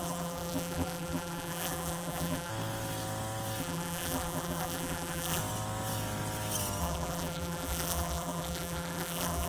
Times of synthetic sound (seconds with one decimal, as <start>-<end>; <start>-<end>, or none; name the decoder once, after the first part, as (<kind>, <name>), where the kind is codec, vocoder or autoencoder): 0.0-2.5 (vocoder, BigVGAN v2); 3.6-5.4; 6.8-9.5

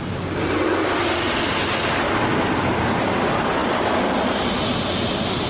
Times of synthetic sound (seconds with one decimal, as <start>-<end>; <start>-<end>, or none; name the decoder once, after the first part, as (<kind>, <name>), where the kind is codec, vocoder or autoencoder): 3.6-5.5 (vocoder, BigVGAN v2)